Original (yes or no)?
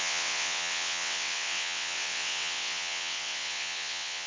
no